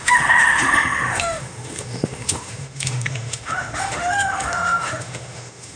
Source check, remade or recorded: remade